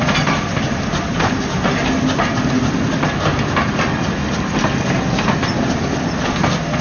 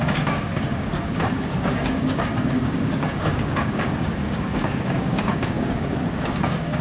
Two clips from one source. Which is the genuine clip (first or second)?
first